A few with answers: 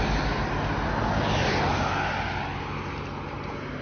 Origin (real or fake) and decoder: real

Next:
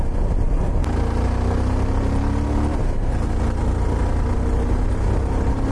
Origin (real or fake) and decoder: real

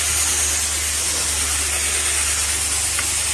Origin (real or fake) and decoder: real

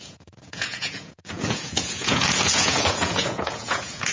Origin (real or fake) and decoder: fake, vocoder, Vocos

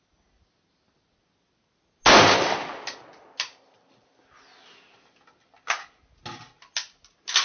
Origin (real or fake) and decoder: real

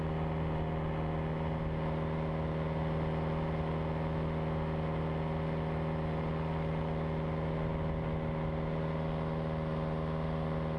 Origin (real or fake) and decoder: real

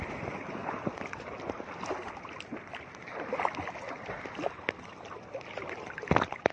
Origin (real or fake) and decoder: real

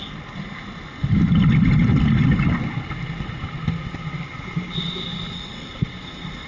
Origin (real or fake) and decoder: real